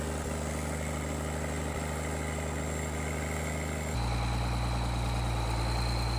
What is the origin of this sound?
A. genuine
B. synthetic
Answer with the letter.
A